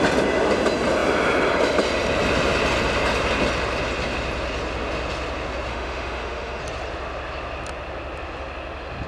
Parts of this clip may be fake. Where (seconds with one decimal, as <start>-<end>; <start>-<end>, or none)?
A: 5.7-6.6